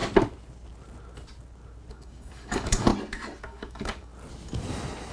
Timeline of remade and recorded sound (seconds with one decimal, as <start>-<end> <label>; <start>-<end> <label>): 0.0-1.9 recorded; 1.9-2.9 remade; 2.9-3.4 recorded; 3.4-4.1 remade; 4.1-5.1 recorded